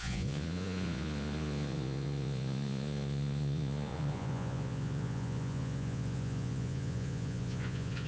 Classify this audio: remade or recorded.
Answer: remade